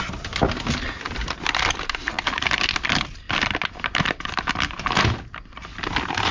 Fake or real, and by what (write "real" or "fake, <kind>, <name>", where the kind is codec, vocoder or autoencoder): real